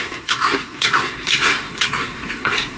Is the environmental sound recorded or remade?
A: remade